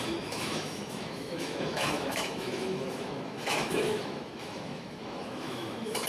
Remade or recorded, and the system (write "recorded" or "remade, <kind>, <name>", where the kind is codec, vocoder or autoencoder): remade, autoencoder, DAC-VAE